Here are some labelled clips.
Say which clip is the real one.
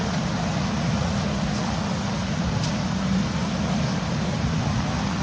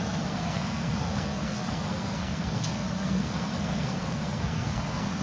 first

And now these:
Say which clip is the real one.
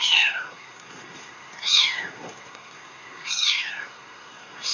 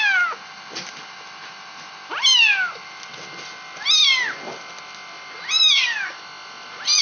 second